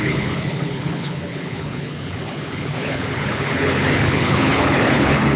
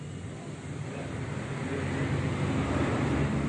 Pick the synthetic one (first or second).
first